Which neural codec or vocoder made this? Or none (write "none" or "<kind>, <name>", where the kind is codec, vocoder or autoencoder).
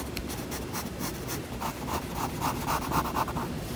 none